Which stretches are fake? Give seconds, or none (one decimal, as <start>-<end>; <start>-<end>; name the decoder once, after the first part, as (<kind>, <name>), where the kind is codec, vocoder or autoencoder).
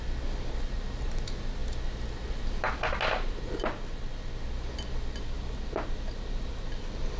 none